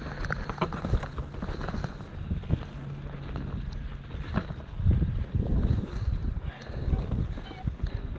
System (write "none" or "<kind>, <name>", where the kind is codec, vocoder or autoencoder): none